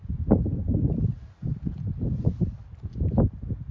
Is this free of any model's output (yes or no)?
yes